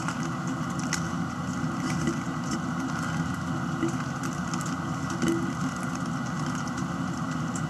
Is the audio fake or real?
real